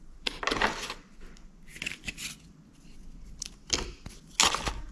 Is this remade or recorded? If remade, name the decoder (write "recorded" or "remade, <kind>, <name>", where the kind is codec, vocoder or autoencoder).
recorded